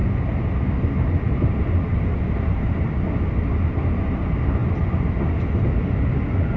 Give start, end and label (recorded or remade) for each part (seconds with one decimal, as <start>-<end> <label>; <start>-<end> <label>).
0.0-6.6 recorded